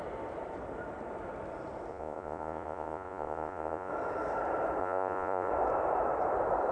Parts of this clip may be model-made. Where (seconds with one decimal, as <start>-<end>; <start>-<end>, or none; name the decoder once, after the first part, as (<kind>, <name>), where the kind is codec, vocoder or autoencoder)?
1.9-3.9 (vocoder, Vocos); 4.8-5.5